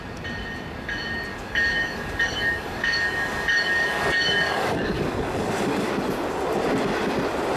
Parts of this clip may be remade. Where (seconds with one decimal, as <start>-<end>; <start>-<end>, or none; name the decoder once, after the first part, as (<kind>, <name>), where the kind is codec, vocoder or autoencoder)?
1.3-5.9 (codec, DAC)